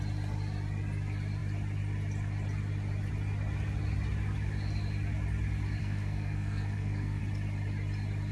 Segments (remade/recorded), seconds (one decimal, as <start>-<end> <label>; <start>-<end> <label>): 0.0-5.8 recorded; 5.8-7.2 remade; 7.2-8.3 recorded